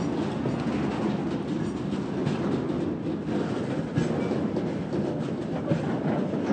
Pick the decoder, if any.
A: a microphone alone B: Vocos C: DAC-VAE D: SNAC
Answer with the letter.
A